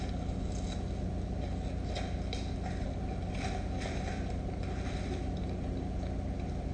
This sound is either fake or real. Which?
real